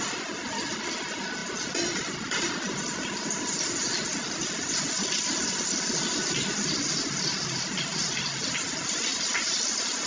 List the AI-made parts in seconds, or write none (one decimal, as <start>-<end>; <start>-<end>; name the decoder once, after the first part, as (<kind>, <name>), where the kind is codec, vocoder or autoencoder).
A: none